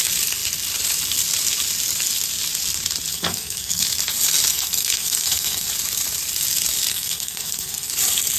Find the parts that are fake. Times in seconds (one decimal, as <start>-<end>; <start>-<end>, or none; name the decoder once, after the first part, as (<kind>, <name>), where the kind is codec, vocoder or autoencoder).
3.1-3.8 (codec, SNAC); 4.5-5.7; 6.9-7.9